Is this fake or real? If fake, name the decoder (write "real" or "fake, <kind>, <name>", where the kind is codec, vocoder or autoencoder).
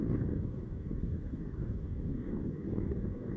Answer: fake, codec, DAC